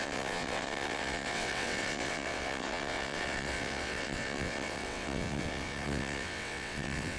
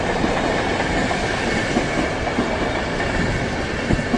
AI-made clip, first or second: first